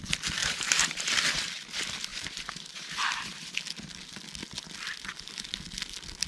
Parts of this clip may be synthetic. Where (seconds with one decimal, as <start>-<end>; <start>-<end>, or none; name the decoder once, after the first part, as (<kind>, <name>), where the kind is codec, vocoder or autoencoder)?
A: 0.4-1.1 (vocoder, BigVGAN v2); 2.1-3.6